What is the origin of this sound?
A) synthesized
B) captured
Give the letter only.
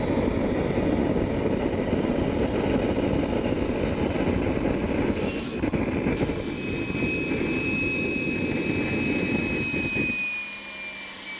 B